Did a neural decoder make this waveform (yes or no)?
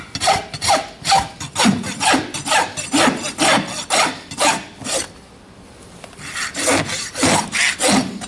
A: no